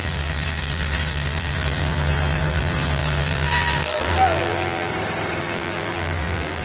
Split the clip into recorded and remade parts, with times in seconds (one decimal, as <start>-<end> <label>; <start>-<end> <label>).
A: 0.0-4.9 remade; 4.9-5.4 recorded; 5.4-6.6 remade